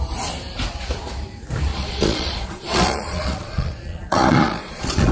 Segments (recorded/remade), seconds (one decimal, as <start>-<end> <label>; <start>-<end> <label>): 0.0-1.7 recorded; 1.7-5.1 remade